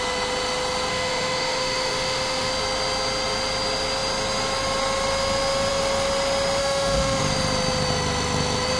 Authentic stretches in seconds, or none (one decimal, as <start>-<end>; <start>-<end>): 0.0-0.9; 2.5-6.6; 7.2-8.8